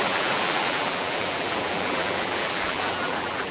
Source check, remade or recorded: remade